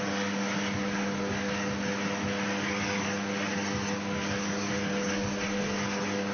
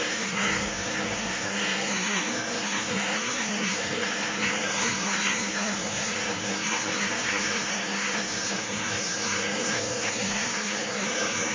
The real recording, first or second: first